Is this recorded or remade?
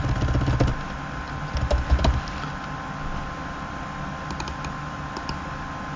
recorded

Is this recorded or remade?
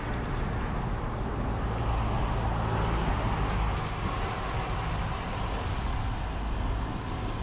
recorded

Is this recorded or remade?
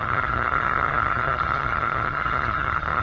remade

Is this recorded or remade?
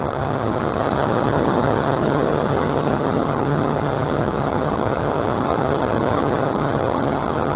remade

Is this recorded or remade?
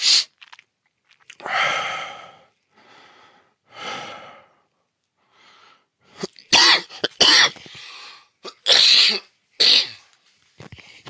recorded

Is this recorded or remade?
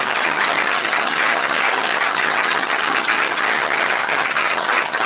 remade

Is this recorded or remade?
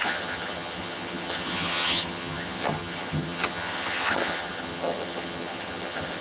remade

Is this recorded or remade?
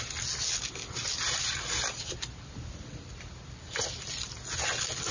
recorded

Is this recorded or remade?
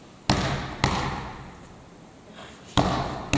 recorded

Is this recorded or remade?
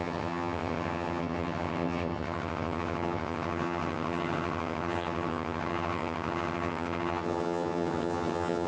remade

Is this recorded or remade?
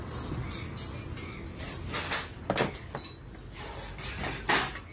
recorded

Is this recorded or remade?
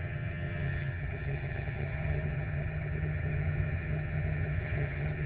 remade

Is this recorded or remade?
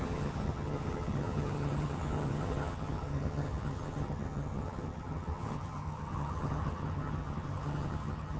remade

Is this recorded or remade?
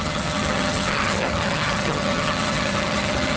remade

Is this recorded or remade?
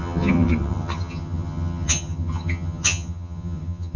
remade